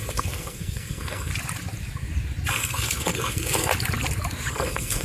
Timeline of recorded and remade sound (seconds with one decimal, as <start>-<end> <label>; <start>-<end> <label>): 0.0-1.3 remade; 1.3-2.5 recorded; 2.5-3.7 remade; 3.7-4.5 recorded; 4.5-5.0 remade